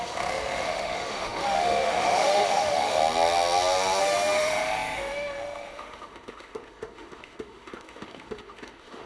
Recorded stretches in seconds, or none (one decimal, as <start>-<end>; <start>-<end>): 3.0-4.0